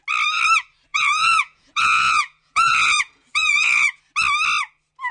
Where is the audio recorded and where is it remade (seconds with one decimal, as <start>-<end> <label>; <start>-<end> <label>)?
0.0-0.9 recorded; 0.9-4.0 remade; 4.0-5.1 recorded